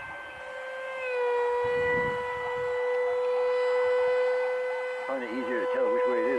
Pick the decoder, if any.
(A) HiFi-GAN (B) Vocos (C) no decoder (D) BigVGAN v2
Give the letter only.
C